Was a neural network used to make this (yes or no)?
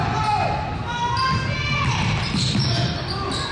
no